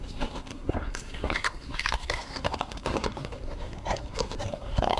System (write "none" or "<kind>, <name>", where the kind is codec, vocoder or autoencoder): codec, SNAC